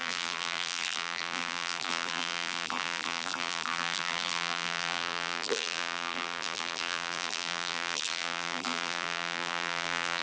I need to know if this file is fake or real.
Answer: fake